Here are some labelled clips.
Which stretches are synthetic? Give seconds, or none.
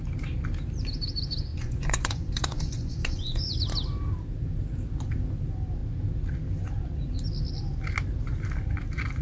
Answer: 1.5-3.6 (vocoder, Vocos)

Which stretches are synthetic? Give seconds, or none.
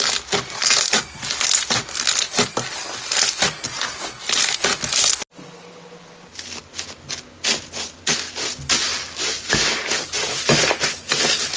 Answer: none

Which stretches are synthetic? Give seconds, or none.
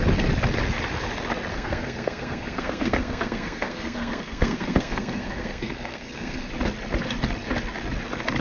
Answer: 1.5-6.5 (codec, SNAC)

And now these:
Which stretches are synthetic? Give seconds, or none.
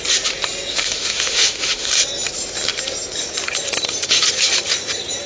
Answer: 0.7-1.9 (autoencoder, DAC-VAE)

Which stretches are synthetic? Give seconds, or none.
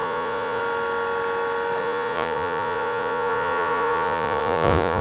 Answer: 0.0-0.6 (vocoder, Vocos); 1.8-5.0